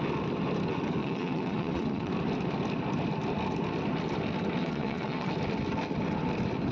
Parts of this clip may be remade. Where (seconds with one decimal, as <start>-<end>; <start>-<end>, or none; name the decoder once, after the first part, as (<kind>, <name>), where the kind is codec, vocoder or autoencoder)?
1.0-2.1 (vocoder, Vocos); 4.6-5.3